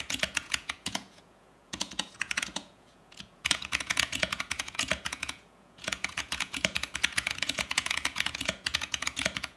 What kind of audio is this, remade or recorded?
remade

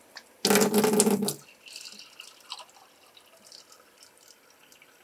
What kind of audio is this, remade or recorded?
recorded